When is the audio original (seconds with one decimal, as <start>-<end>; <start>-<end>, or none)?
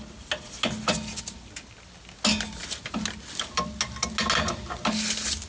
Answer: 0.0-5.5